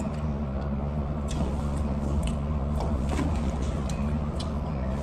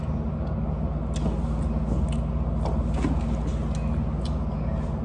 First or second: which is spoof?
first